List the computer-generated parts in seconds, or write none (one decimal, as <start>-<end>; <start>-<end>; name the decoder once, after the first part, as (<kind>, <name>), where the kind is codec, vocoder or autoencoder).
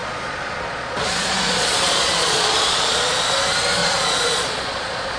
0.0-3.1 (vocoder, Vocos); 3.8-5.2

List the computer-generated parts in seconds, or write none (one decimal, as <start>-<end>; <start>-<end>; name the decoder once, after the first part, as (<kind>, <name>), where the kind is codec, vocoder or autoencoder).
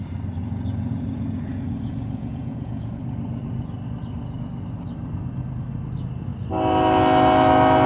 0.4-2.9 (vocoder, Vocos)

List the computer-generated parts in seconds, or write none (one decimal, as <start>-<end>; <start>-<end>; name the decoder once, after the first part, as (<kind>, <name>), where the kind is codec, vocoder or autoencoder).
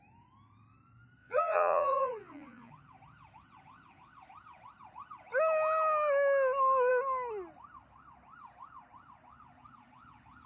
1.2-2.7 (vocoder, Vocos)